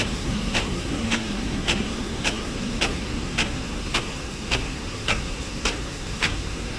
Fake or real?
fake